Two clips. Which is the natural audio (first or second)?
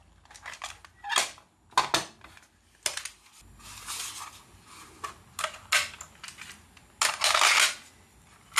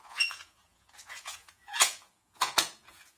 first